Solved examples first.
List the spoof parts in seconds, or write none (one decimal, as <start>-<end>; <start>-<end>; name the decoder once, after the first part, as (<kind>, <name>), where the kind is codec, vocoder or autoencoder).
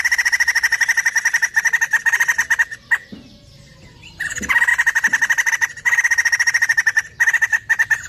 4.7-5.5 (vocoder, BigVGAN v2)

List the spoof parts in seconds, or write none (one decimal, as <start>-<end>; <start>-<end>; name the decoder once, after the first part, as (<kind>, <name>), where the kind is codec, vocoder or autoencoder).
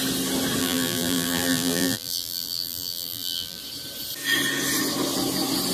0.6-3.6 (vocoder, BigVGAN v2)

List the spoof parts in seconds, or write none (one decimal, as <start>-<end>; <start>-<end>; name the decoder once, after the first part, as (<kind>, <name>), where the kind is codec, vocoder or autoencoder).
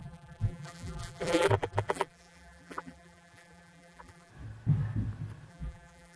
0.0-4.3 (vocoder, BigVGAN v2); 5.5-6.2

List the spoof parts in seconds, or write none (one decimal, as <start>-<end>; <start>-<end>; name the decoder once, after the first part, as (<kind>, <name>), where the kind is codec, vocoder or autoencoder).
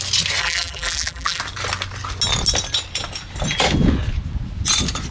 0.4-1.4 (vocoder, BigVGAN v2)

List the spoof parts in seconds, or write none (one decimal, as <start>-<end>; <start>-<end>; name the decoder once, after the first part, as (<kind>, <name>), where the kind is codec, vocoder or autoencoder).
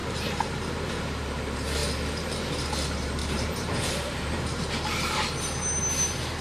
0.0-1.8 (vocoder, BigVGAN v2); 2.6-6.4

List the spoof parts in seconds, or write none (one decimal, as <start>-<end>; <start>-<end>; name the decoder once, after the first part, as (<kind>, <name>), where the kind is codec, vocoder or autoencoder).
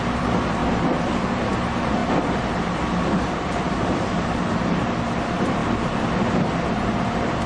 0.0-0.6 (vocoder, BigVGAN v2); 1.1-5.6; 6.7-7.5